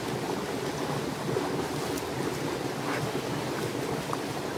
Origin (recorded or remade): recorded